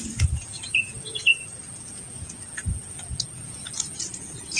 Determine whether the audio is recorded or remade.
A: remade